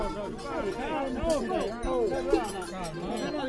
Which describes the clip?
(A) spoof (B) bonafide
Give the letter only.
B